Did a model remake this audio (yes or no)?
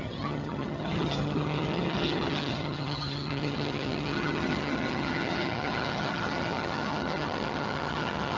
yes